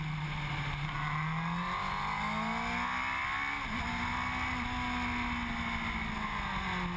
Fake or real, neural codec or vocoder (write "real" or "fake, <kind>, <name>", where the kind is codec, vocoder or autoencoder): real